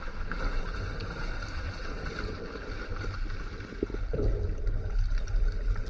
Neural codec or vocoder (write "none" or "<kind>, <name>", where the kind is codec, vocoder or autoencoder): none